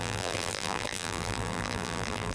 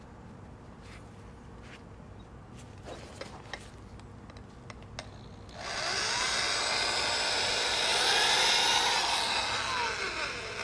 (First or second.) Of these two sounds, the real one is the second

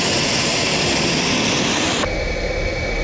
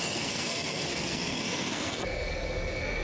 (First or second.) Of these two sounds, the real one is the first